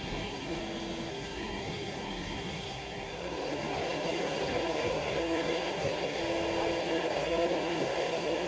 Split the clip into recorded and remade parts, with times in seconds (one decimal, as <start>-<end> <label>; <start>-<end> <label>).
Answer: 0.0-0.6 remade; 0.6-1.1 recorded; 1.1-6.2 remade; 6.2-6.8 recorded; 6.8-8.5 remade